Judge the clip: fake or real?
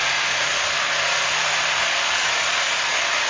real